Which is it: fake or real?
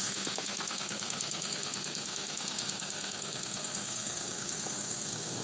fake